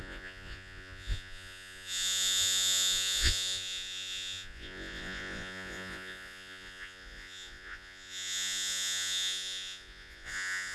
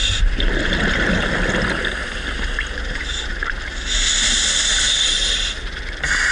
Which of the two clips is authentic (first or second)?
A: second